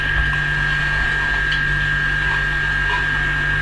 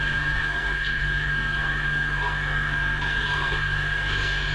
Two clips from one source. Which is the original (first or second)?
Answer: first